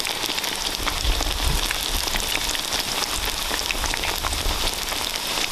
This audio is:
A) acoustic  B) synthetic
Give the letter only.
A